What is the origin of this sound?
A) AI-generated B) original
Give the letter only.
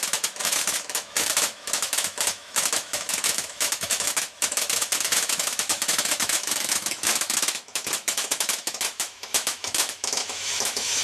A